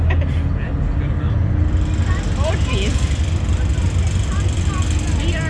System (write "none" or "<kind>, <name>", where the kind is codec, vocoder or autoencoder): none